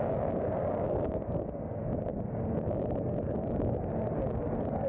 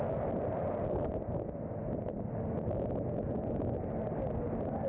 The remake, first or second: first